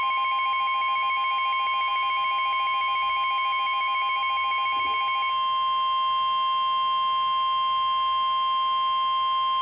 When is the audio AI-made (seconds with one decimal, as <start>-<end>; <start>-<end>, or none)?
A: none